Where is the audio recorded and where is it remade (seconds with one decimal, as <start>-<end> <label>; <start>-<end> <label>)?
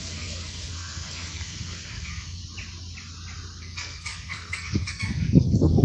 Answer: 0.0-2.4 remade; 2.4-3.6 recorded; 3.6-5.8 remade